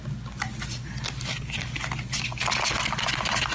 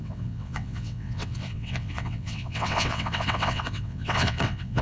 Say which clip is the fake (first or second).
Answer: second